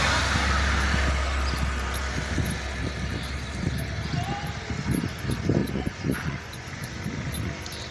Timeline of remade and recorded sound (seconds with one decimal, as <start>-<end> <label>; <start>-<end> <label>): 0.0-5.6 recorded; 5.6-6.8 remade; 6.8-7.9 recorded